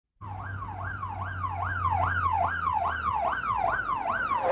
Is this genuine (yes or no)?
yes